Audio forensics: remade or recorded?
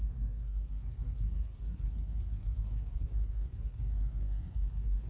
remade